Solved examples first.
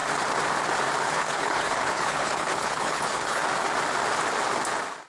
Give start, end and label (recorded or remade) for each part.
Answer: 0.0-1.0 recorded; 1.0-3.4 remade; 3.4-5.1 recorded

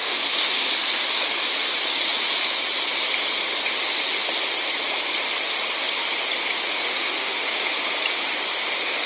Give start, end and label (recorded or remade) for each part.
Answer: 0.0-0.7 remade; 0.7-6.8 recorded; 6.8-7.5 remade; 7.5-9.1 recorded

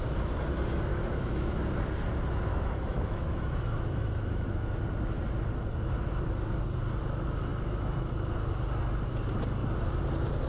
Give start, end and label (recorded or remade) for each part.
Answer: 0.0-0.9 recorded; 0.9-1.5 remade; 1.5-2.5 recorded; 2.5-4.8 remade; 4.8-7.5 recorded; 7.5-8.1 remade; 8.1-10.5 recorded

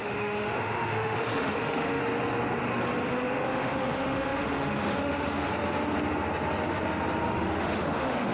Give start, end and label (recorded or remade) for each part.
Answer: 0.0-2.0 remade; 2.0-3.1 recorded; 3.1-5.5 remade; 5.5-7.3 recorded; 7.3-8.3 remade

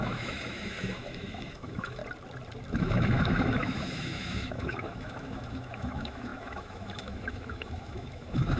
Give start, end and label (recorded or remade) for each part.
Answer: 0.0-2.0 remade; 2.0-2.7 recorded; 2.7-8.6 remade

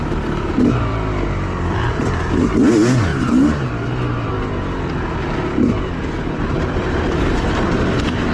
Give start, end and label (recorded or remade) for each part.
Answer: 0.0-8.3 recorded

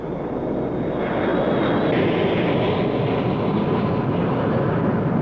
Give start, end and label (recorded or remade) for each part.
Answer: 0.0-5.2 recorded